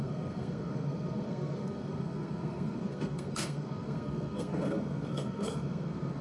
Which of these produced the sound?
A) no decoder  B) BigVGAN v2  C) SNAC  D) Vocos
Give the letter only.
C